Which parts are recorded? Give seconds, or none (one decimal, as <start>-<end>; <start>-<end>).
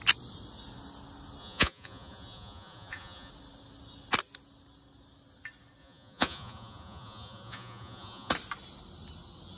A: 0.0-1.4; 3.3-5.8; 8.3-9.6